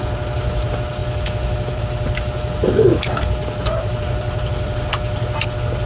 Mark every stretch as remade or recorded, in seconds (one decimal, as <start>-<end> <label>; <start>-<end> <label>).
0.0-5.9 recorded